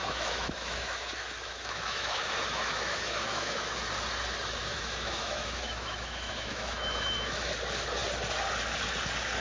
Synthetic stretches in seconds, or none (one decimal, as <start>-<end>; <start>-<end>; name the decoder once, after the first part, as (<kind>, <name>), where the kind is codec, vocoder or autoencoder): 0.0-3.7 (autoencoder, DAC-VAE); 4.6-7.5